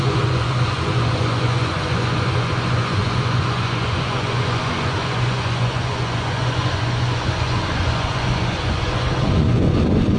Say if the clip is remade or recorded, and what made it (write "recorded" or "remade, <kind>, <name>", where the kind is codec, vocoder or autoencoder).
remade, vocoder, Vocos